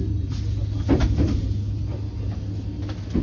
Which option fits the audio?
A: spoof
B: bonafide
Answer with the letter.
B